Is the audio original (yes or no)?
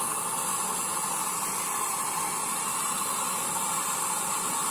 yes